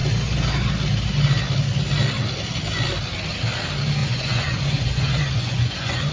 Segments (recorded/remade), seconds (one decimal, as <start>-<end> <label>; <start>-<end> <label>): 0.0-4.0 recorded; 4.0-6.1 remade